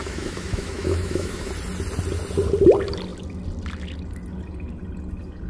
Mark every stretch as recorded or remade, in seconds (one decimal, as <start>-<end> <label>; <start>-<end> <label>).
0.0-1.5 remade; 1.5-5.5 recorded